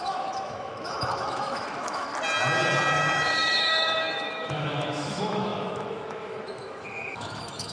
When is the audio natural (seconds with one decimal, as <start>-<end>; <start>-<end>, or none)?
2.1-2.9